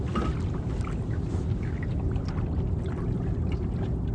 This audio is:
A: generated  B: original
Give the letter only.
B